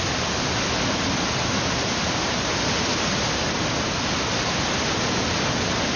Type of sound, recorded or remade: recorded